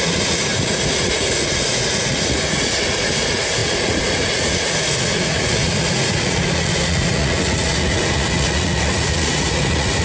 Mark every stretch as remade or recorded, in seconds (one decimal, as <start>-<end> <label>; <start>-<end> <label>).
0.0-10.0 remade